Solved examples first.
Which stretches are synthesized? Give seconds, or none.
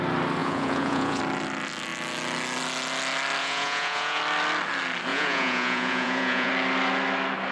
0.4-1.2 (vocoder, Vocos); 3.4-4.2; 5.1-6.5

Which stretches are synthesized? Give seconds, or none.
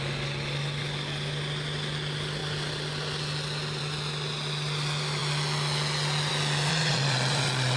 6.7-7.8 (vocoder, Vocos)